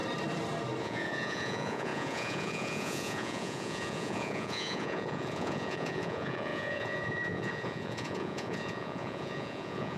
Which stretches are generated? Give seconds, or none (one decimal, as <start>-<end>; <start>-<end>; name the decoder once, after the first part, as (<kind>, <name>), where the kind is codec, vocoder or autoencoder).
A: 0.8-10.0 (vocoder, Vocos)